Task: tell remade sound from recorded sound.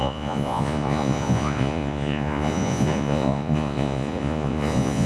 remade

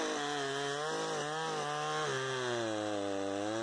recorded